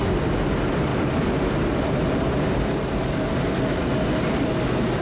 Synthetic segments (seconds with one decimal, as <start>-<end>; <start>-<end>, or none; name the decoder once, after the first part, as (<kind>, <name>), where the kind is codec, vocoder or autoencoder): none